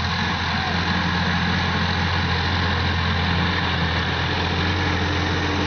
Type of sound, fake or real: real